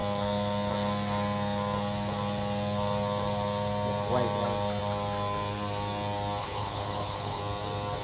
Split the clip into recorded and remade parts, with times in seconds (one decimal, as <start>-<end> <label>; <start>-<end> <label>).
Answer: 0.0-6.4 recorded; 6.4-7.4 remade; 7.4-8.0 recorded